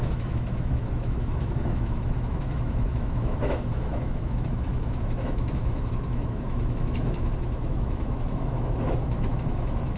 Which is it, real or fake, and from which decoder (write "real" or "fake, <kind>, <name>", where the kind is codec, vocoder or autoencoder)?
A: fake, autoencoder, DAC-VAE